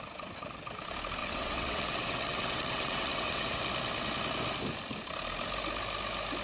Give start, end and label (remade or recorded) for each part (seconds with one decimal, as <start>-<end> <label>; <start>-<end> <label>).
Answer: 0.0-1.2 recorded; 1.2-3.6 remade; 3.6-6.4 recorded